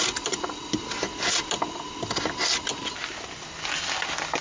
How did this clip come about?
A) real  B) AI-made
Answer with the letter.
A